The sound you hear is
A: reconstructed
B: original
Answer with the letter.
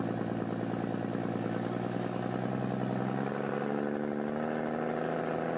B